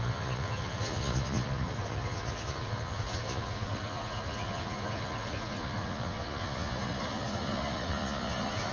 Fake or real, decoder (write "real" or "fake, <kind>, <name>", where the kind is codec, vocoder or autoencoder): fake, vocoder, Vocos